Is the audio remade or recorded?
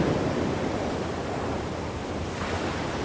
remade